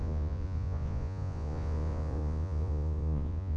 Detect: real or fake fake